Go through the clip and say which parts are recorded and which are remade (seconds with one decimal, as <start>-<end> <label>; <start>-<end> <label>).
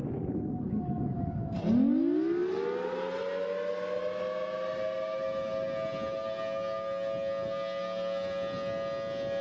0.0-9.4 recorded